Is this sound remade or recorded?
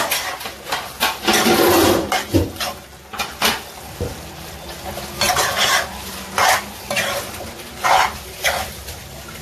recorded